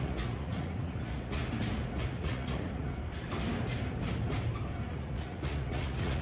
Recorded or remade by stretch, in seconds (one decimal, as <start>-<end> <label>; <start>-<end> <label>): 0.0-1.4 remade; 1.4-2.0 recorded; 2.0-2.9 remade; 2.9-4.9 recorded; 4.9-6.2 remade

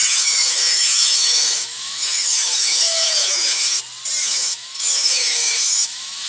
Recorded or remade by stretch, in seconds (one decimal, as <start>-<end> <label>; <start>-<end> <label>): 0.0-3.8 remade; 3.8-4.2 recorded; 4.2-6.3 remade

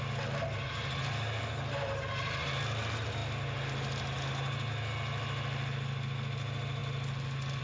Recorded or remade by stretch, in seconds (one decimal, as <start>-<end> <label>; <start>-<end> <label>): 0.0-7.6 recorded

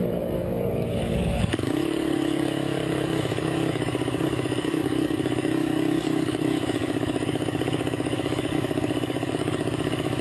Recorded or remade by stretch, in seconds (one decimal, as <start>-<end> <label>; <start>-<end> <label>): 0.0-10.2 remade